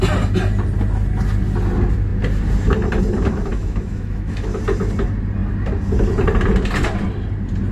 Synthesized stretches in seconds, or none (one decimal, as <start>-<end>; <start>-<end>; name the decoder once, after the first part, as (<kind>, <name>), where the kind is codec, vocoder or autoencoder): 3.5-4.6 (autoencoder, DAC-VAE)